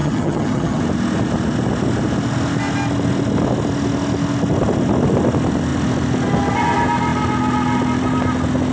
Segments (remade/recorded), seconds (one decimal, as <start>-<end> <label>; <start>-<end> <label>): 0.0-0.8 remade; 0.8-8.7 recorded